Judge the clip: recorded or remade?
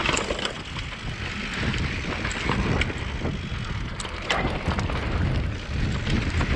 recorded